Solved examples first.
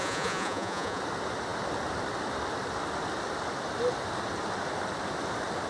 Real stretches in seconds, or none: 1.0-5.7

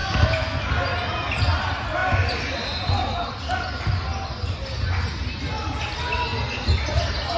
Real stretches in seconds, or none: 0.6-7.4

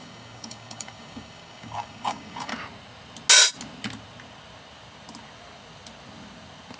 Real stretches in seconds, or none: 2.5-6.8